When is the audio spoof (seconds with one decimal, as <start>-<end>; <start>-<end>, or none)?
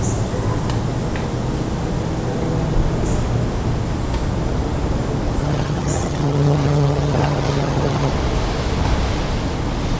5.4-8.1